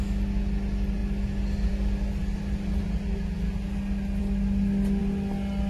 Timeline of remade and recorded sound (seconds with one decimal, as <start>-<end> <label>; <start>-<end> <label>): 0.0-5.7 recorded